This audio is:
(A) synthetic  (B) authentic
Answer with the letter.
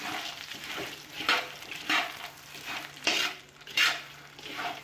A